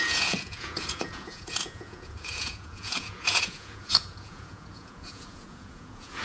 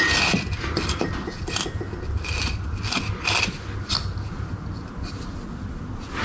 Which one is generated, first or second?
first